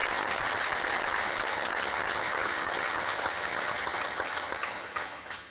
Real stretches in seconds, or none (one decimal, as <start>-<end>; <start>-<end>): none